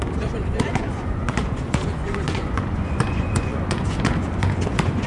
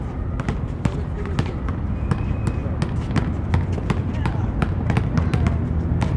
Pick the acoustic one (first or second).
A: second